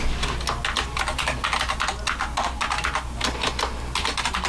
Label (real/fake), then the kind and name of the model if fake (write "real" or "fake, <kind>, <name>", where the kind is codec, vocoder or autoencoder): real